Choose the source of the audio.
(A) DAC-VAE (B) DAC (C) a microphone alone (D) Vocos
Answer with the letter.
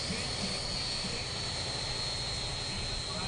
C